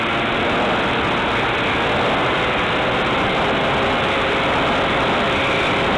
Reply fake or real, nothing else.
real